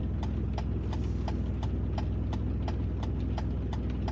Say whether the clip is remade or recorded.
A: recorded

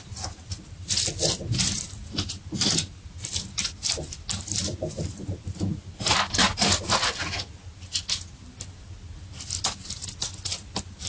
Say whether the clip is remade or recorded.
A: recorded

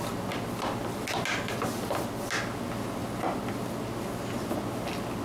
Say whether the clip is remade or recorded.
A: recorded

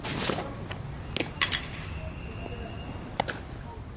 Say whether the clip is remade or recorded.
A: recorded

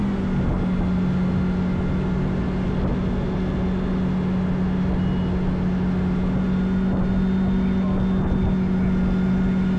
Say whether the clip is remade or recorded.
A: recorded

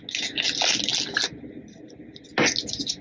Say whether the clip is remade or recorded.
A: recorded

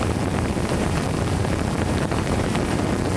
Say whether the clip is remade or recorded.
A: remade